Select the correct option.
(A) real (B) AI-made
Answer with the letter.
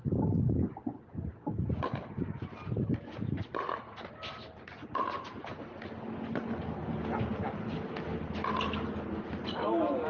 A